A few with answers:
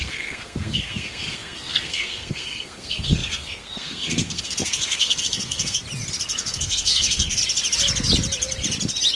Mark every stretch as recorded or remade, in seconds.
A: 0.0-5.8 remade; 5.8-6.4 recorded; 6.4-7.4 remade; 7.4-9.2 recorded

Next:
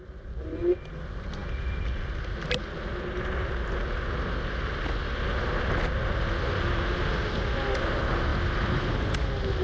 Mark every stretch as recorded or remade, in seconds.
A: 0.0-9.6 recorded

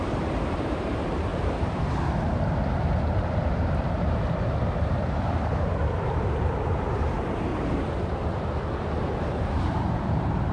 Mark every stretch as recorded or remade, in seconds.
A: 0.0-1.3 remade; 1.3-3.6 recorded; 3.6-7.5 remade; 7.5-9.2 recorded; 9.2-10.5 remade

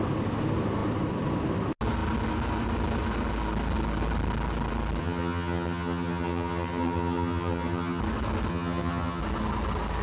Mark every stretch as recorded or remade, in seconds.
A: 0.0-5.0 recorded; 5.0-8.0 remade; 8.0-8.5 recorded; 8.5-9.2 remade; 9.2-10.0 recorded

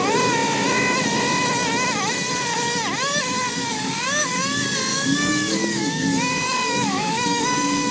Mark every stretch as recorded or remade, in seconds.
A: 0.0-3.7 recorded; 3.7-4.3 remade; 4.3-4.9 recorded; 4.9-7.9 remade

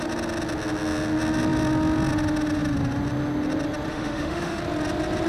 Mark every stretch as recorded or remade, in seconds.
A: 0.0-3.9 recorded; 3.9-4.6 remade; 4.6-5.3 recorded

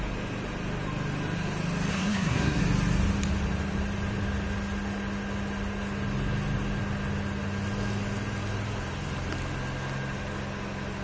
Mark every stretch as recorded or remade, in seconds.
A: 0.0-1.9 recorded; 1.9-2.6 remade; 2.6-11.0 recorded